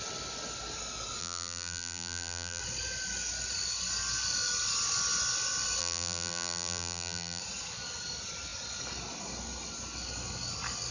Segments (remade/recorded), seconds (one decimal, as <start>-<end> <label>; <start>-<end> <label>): 0.0-1.2 recorded; 1.2-2.6 remade; 2.6-5.8 recorded; 5.8-7.4 remade; 7.4-10.9 recorded